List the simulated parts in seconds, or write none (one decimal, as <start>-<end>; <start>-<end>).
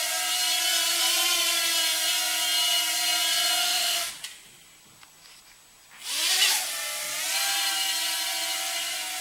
3.6-4.1